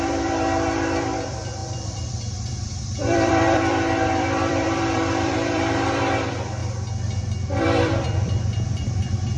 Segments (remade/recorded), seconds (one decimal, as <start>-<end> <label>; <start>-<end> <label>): 0.0-6.6 remade; 6.6-7.2 recorded; 7.2-9.4 remade